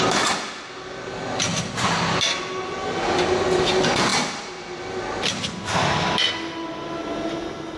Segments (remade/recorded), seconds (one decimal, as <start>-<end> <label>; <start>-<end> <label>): 0.0-7.8 recorded